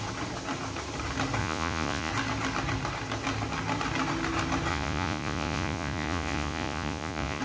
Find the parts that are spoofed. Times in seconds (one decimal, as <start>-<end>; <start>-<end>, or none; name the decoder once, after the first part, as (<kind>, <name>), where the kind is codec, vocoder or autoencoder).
1.4-2.1 (vocoder, Vocos); 4.7-7.4